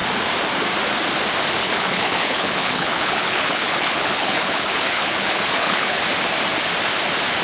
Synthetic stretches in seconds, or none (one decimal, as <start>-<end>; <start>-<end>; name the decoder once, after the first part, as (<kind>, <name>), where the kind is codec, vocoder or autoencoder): 1.6-6.0 (codec, HILCodec)